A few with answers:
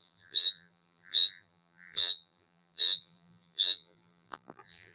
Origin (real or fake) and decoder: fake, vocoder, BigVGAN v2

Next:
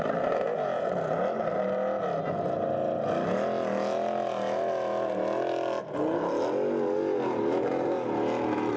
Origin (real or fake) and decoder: real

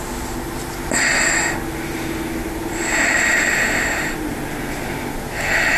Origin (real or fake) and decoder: real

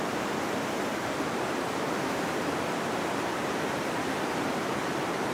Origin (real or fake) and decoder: fake, vocoder, BigVGAN v2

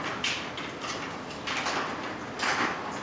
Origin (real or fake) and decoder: real